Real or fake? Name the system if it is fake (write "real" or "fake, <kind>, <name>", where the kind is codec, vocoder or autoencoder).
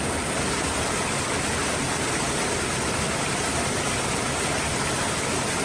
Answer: real